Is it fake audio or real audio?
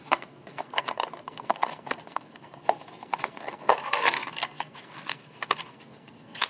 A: fake